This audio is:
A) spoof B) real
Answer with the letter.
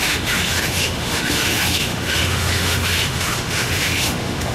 A